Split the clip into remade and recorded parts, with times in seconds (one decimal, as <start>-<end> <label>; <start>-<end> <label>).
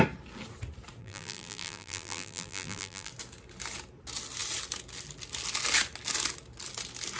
0.0-1.0 recorded; 1.0-3.1 remade; 3.1-7.2 recorded